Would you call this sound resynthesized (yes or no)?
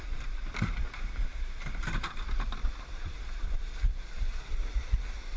yes